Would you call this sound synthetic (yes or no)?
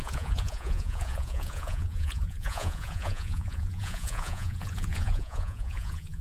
yes